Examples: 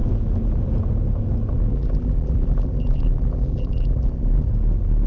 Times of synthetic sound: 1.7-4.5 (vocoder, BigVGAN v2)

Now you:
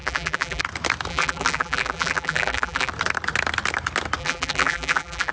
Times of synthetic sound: 0.0-0.6 (vocoder, BigVGAN v2); 1.1-2.9; 4.2-5.3

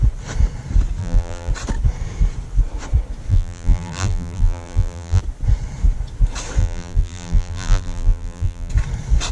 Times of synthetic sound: 1.0-1.5 (vocoder, BigVGAN v2); 3.3-5.2; 6.6-8.7

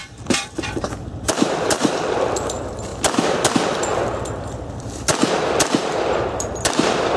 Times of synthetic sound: 0.0-2.9 (vocoder, BigVGAN v2); 3.5-5.1; 6.0-7.2

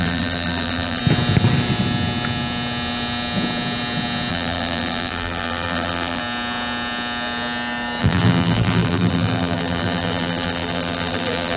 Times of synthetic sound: 0.0-1.0 (vocoder, BigVGAN v2); 4.3-6.2; 8.0-11.6

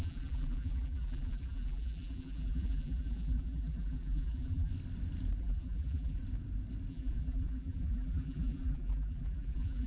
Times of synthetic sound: 0.0-4.7 (vocoder, BigVGAN v2); 5.4-6.2; 6.9-9.9